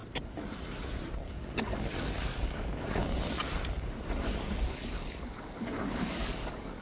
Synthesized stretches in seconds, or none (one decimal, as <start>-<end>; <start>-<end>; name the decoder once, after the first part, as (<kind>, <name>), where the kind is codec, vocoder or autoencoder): 1.3-3.0 (codec, DAC); 4.5-6.8